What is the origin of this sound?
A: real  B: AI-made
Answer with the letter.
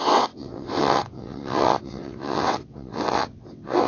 B